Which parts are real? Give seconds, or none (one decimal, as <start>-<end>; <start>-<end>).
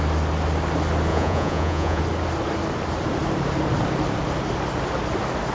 0.0-1.1; 2.0-5.5